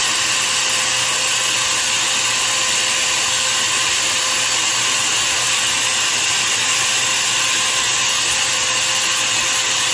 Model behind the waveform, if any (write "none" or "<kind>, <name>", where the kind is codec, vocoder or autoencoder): none